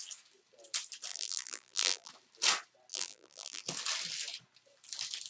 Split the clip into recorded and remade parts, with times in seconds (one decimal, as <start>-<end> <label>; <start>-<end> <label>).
0.0-1.1 recorded; 1.1-2.1 remade; 2.1-2.9 recorded; 2.9-3.6 remade; 3.6-5.3 recorded